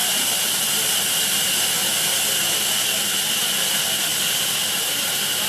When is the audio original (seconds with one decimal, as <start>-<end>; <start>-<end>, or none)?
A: 0.0-5.5